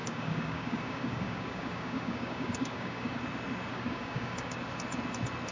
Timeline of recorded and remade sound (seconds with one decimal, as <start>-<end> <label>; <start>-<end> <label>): 0.0-3.2 remade; 3.2-3.7 recorded; 3.7-4.6 remade; 4.6-5.5 recorded

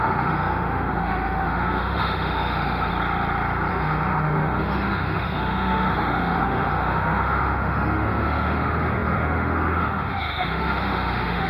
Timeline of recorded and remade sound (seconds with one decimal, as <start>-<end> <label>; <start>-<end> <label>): 0.0-2.9 remade; 2.9-3.7 recorded; 3.7-11.5 remade